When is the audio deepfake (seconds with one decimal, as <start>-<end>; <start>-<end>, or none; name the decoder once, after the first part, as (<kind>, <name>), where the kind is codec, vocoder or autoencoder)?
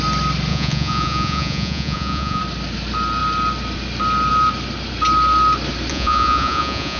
0.5-2.4 (vocoder, Vocos); 5.9-7.0